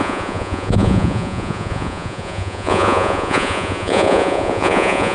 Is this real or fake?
fake